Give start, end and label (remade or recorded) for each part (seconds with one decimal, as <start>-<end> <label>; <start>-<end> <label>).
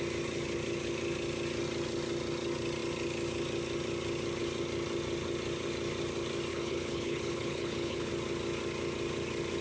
0.0-6.5 recorded; 6.5-8.1 remade; 8.1-9.6 recorded